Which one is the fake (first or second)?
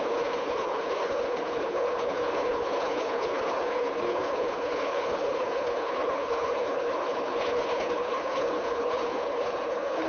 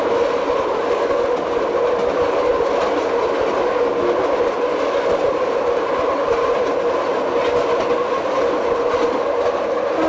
first